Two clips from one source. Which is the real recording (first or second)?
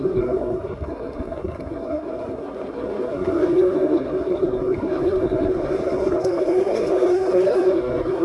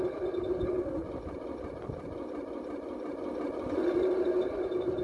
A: second